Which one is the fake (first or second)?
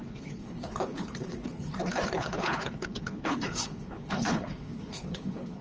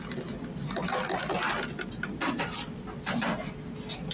first